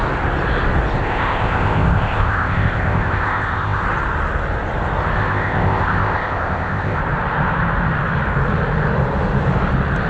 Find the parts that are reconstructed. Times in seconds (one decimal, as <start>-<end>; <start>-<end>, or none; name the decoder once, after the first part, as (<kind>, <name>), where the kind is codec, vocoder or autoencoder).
1.0-3.8 (codec, ZipCodec); 5.2-7.0